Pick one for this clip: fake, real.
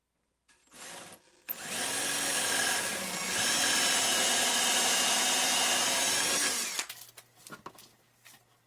real